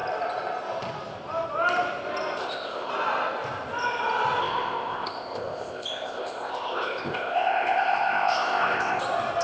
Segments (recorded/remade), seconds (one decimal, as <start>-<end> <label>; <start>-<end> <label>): 0.0-2.4 recorded; 2.4-2.9 remade; 2.9-4.4 recorded; 4.4-9.0 remade; 9.0-9.4 recorded